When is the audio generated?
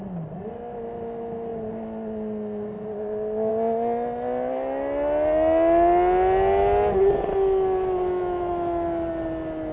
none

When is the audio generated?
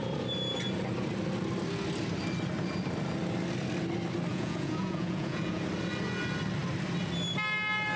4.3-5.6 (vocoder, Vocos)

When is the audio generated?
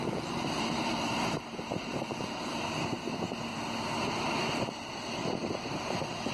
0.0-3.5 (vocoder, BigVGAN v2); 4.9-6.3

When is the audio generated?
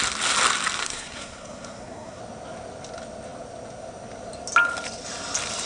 0.8-2.2 (codec, SNAC)